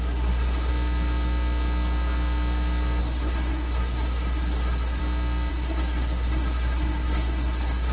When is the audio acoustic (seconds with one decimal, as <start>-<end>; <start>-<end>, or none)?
0.7-3.0; 5.0-5.5